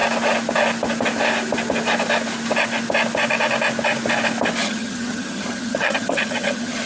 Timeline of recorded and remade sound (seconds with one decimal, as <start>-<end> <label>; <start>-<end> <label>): 0.0-4.6 recorded; 4.6-6.9 remade